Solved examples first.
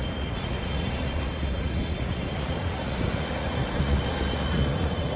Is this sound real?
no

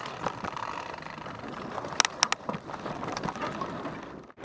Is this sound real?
yes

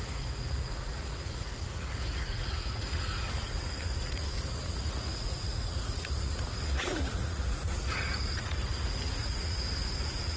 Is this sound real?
no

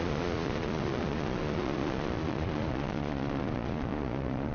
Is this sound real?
no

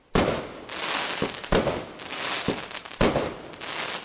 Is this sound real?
yes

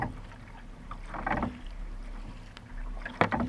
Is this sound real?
yes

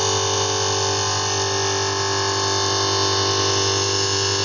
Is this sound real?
yes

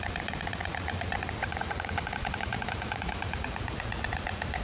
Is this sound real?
no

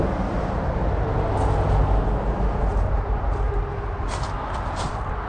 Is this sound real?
yes